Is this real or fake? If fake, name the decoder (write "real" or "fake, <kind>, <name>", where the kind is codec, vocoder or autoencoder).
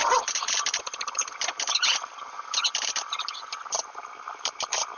fake, vocoder, BigVGAN v2